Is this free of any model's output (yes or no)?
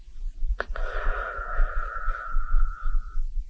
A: no